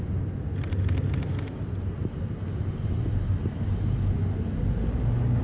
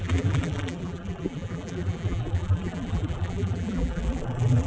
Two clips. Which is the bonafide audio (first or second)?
first